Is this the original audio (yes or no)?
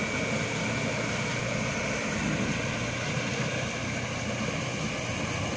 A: yes